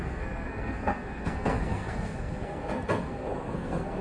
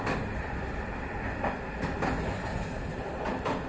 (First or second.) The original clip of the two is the second